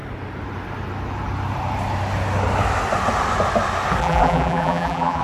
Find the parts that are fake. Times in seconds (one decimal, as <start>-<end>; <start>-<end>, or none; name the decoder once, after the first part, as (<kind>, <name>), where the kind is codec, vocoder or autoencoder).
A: 4.0-5.2 (vocoder, BigVGAN v2)